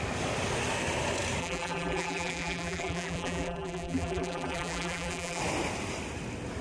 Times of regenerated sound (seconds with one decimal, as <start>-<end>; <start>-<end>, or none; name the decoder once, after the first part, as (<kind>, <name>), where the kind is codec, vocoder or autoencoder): 1.4-5.4 (vocoder, BigVGAN v2)